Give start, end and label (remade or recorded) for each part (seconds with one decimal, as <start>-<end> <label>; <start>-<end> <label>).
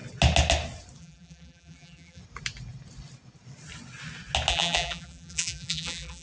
0.0-1.0 recorded; 1.0-2.2 remade; 2.2-4.5 recorded; 4.5-6.2 remade